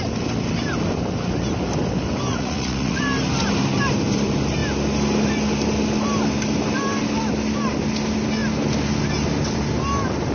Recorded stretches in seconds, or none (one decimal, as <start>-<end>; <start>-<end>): 0.0-2.3; 3.0-10.3